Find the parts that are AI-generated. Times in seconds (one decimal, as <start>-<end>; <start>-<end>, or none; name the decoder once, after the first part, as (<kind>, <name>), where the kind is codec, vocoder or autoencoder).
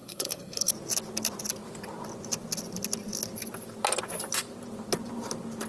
0.0-0.7 (codec, SNAC)